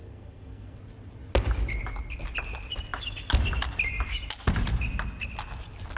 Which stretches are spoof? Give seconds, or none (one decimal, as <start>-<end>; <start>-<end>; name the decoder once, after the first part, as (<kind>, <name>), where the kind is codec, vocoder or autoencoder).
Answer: 0.0-0.8 (codec, SNAC)